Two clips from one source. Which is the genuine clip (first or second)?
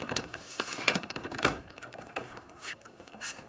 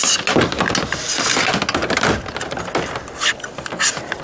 second